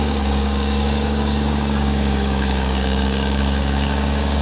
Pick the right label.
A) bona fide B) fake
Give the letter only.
B